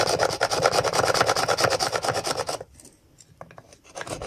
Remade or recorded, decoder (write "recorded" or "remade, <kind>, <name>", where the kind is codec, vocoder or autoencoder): recorded